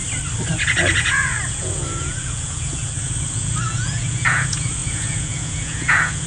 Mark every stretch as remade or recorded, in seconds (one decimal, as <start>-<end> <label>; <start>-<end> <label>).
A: 0.0-0.5 recorded; 0.5-6.3 remade